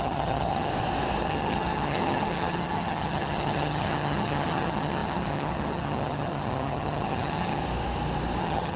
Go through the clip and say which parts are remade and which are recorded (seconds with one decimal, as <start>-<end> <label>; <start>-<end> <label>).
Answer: 0.0-0.7 remade; 0.7-1.2 recorded; 1.2-7.6 remade; 7.6-8.4 recorded; 8.4-8.8 remade